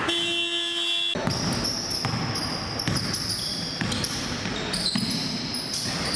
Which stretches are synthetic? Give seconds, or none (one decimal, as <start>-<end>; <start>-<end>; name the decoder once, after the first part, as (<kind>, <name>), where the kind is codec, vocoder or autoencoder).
none